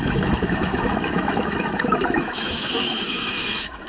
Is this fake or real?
fake